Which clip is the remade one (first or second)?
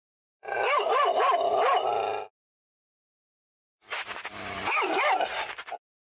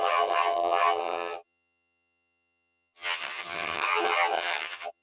second